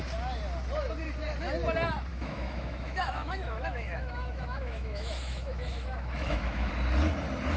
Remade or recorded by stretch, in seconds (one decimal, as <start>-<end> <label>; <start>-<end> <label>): 0.0-2.1 recorded; 2.1-6.7 remade; 6.7-7.6 recorded